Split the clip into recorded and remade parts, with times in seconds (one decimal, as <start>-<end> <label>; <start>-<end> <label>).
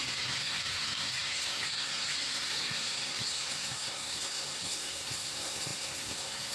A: 0.0-6.5 remade